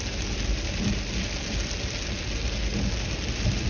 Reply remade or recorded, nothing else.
recorded